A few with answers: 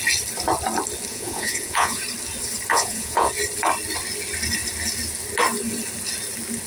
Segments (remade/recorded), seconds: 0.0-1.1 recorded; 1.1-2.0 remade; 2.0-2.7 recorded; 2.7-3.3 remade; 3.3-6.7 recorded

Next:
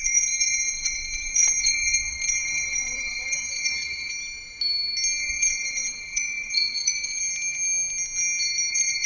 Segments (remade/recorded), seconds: 0.0-4.1 remade; 4.1-5.2 recorded; 5.2-7.2 remade; 7.2-8.7 recorded; 8.7-9.1 remade

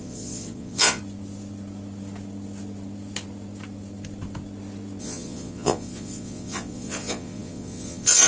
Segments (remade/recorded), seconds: 0.0-1.0 remade; 1.0-5.0 recorded; 5.0-8.3 remade

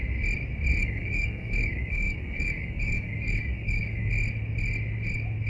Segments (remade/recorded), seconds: 0.0-0.8 recorded; 0.8-4.1 remade; 4.1-5.5 recorded

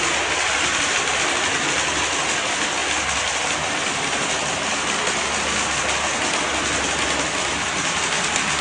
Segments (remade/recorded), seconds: 0.0-8.6 recorded

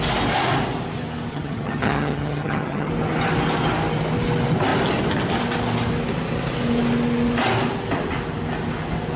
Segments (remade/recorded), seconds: 0.0-1.3 recorded; 1.3-2.9 remade; 2.9-9.2 recorded

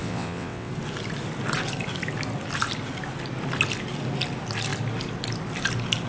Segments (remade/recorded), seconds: 0.0-0.7 remade; 0.7-6.1 recorded